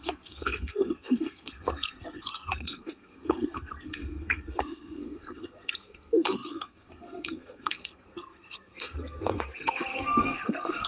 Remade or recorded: remade